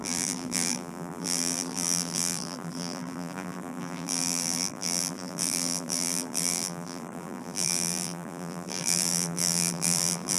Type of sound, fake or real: fake